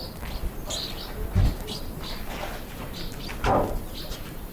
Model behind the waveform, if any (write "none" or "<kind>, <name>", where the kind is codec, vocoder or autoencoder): vocoder, BigVGAN v2